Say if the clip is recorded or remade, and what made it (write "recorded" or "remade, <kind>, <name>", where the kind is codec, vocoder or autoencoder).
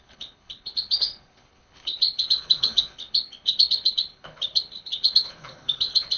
remade, codec, HILCodec